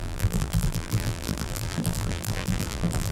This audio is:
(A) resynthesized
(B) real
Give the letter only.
A